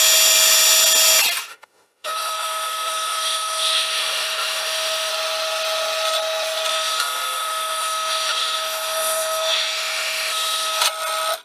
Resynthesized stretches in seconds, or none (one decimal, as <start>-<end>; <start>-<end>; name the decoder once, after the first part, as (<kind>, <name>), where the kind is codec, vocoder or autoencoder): 1.5-5.1 (autoencoder, DAC-VAE); 6.7-10.8